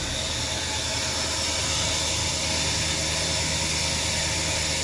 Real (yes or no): yes